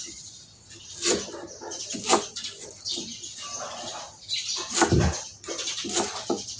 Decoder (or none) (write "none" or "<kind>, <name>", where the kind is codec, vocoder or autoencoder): vocoder, BigVGAN v2